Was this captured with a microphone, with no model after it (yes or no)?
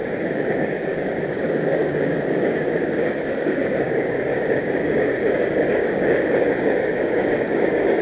no